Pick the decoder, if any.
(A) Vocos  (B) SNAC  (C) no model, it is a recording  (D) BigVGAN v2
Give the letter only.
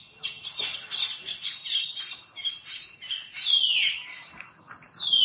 C